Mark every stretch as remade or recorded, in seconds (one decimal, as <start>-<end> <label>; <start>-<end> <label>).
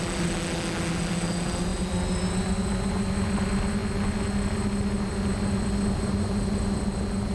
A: 0.0-7.3 recorded